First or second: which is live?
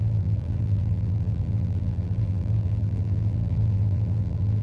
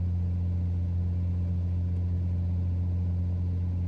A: second